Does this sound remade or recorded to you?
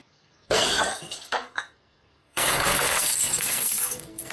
remade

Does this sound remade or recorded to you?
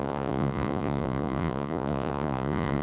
remade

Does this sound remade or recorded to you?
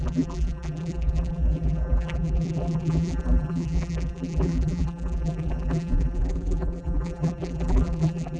remade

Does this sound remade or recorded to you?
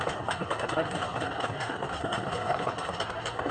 remade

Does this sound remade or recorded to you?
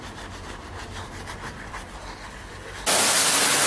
recorded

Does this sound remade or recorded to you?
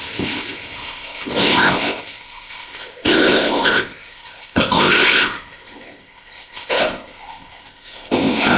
remade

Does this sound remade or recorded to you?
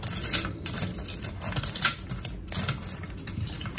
recorded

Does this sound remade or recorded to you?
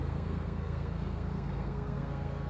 remade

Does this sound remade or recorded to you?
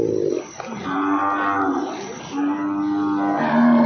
recorded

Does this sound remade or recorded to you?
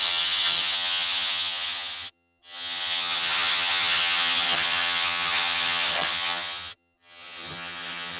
remade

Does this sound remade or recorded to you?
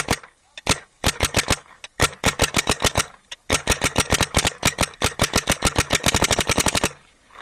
remade